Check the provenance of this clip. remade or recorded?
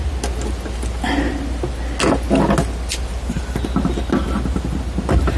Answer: recorded